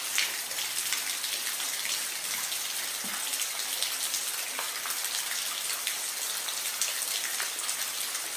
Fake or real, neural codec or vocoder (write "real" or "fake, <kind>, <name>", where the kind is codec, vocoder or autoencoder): real